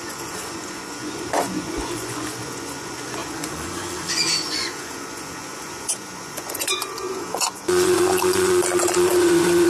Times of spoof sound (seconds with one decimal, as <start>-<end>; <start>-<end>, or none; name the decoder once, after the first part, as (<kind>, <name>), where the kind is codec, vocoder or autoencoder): 0.0-9.7 (vocoder, Vocos)